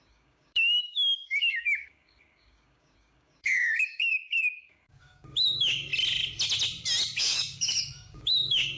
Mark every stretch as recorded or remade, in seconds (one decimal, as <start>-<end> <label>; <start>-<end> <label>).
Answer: 0.0-5.9 remade; 5.9-7.2 recorded; 7.2-8.8 remade